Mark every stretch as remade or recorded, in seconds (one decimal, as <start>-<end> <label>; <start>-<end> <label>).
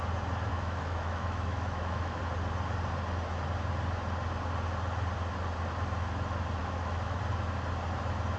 0.0-0.5 recorded; 0.5-2.2 remade; 2.2-6.6 recorded; 6.6-7.2 remade; 7.2-8.4 recorded